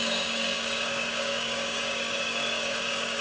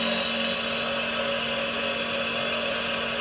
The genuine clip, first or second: second